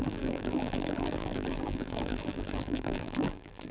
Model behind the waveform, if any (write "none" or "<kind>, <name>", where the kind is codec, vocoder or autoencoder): vocoder, BigVGAN v2